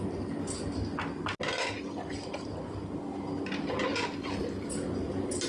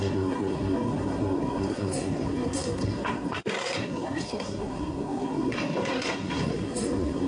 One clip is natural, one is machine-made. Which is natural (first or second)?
first